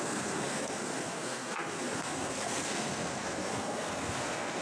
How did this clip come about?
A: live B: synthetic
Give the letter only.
B